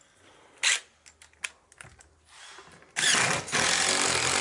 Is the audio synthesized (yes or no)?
no